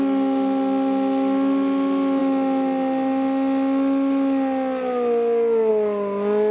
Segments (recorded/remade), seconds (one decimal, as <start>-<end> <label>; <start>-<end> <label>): 0.0-6.5 recorded